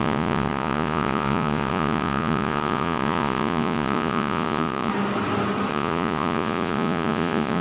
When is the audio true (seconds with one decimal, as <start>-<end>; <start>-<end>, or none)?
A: 4.9-5.7